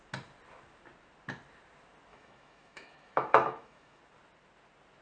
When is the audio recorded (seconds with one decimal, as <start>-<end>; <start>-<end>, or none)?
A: 0.0-2.1; 4.0-5.0